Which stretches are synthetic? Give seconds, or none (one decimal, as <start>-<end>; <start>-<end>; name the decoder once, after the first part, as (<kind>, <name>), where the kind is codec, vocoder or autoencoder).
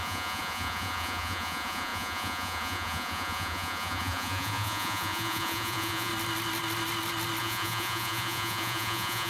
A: 0.0-6.1 (vocoder, Vocos); 7.4-9.3